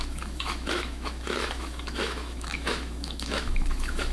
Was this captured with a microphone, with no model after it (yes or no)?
no